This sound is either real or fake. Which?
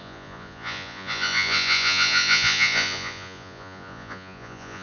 fake